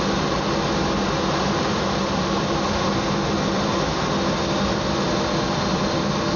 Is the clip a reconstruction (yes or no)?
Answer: no